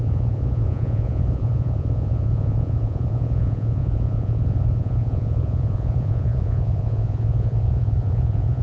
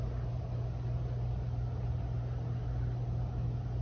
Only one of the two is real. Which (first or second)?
second